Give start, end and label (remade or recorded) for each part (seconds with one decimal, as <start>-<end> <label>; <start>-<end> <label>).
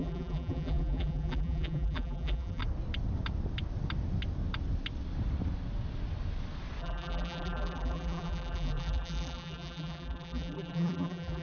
0.0-2.6 remade; 2.6-6.8 recorded; 6.8-11.4 remade